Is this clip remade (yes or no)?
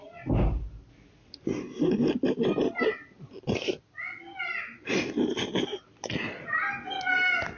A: no